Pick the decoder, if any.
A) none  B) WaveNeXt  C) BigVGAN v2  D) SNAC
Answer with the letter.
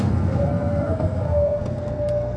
D